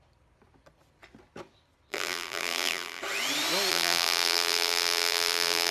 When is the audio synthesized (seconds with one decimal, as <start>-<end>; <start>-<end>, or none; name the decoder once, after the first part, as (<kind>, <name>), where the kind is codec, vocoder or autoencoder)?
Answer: 1.9-3.0 (vocoder, BigVGAN v2); 3.7-5.7